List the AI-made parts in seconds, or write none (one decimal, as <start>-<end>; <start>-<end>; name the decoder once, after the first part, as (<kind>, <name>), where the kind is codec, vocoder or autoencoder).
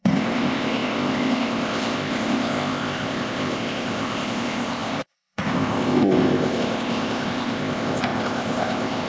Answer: 0.0-9.1 (codec, ZipCodec)